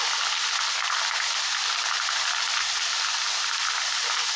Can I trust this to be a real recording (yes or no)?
yes